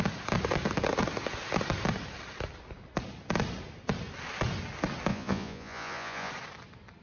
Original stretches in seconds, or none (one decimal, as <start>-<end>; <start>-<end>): 0.0-5.1; 6.3-7.0